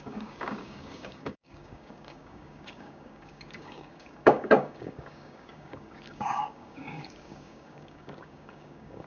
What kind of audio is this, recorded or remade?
remade